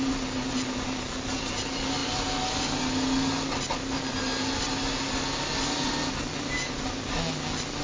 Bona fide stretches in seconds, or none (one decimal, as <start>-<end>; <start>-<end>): 0.0-7.8